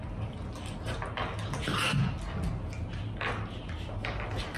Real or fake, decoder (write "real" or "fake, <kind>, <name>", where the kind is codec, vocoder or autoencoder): real